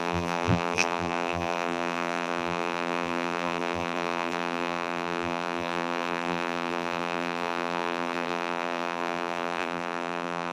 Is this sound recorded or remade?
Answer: remade